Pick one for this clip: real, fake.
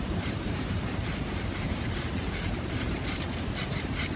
fake